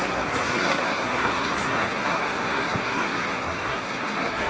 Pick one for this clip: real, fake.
fake